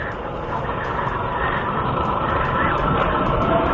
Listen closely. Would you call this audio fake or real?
real